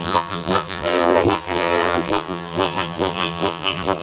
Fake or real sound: fake